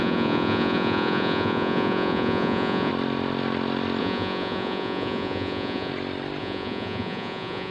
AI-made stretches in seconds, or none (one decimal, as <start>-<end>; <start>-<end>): 0.0-2.9; 4.0-5.9; 6.4-7.7